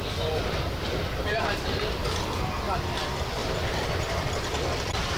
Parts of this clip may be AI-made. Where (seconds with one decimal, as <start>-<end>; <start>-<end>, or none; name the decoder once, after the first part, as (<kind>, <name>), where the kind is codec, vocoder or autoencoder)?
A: 1.3-2.5 (vocoder, BigVGAN v2); 3.4-5.2